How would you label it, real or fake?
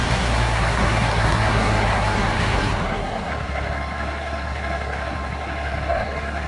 fake